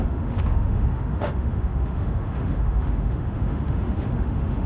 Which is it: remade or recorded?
remade